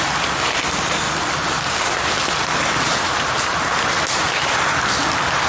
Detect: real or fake real